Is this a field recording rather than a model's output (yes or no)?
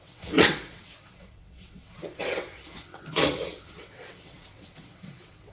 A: no